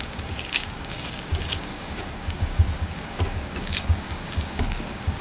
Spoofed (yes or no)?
yes